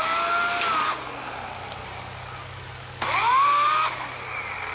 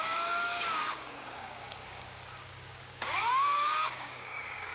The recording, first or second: first